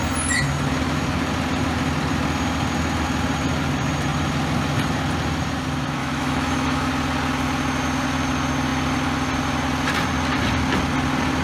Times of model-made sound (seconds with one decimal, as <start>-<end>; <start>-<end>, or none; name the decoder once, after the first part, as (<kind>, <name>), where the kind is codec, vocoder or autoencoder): 6.0-6.9 (autoencoder, DAC-VAE)

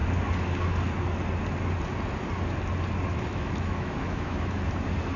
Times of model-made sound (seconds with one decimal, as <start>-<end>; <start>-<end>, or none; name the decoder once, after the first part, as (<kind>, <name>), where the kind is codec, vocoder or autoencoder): 3.1-4.7 (autoencoder, DAC-VAE)

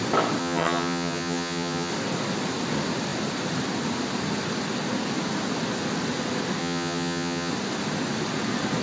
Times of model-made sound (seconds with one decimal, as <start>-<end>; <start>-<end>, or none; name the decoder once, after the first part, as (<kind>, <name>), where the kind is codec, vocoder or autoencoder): 0.4-1.9 (vocoder, HiFi-GAN); 6.6-7.5

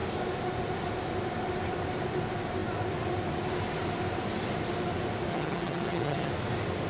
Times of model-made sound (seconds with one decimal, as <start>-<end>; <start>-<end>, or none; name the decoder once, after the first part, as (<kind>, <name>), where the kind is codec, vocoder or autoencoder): 5.3-6.3 (vocoder, HiFi-GAN)

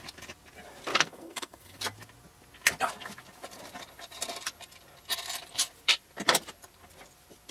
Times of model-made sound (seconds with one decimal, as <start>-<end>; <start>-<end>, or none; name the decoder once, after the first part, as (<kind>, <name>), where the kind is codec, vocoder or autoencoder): 0.9-1.8 (codec, SNAC)

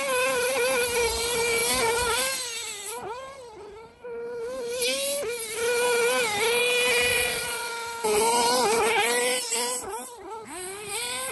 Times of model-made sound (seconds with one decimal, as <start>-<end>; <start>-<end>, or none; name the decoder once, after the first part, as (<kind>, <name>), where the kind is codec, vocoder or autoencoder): 7.1-7.7 (vocoder, Vocos)